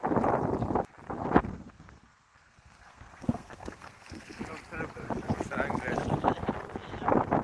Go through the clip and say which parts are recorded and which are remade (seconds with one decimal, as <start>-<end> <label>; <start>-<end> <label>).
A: 0.0-1.5 recorded; 1.5-4.4 remade; 4.4-7.4 recorded